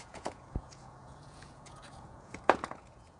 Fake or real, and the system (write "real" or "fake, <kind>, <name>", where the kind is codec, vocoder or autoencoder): fake, vocoder, Vocos